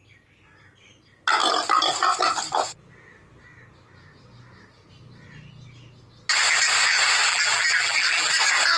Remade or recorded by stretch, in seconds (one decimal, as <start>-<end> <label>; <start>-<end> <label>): 0.0-7.3 recorded; 7.3-8.3 remade; 8.3-8.8 recorded